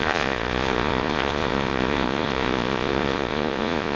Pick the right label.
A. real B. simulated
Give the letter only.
B